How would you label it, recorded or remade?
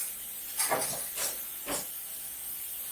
remade